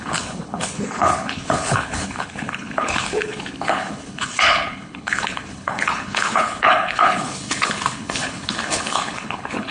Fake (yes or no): yes